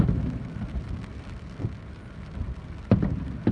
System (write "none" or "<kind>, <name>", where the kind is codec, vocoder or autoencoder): none